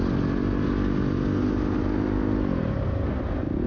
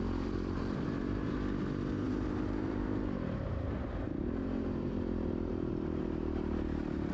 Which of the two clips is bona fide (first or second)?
first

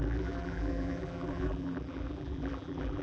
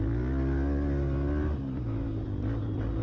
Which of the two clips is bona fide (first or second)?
second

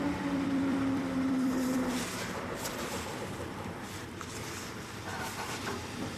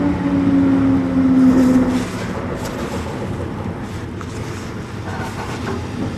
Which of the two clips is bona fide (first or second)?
second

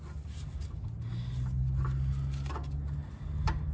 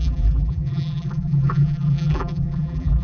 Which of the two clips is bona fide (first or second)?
first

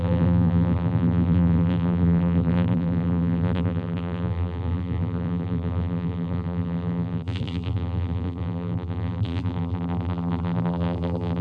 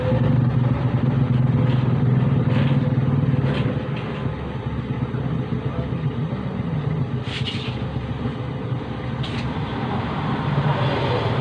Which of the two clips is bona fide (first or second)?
second